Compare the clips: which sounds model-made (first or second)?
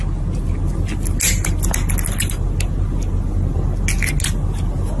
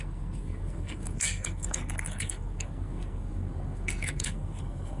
second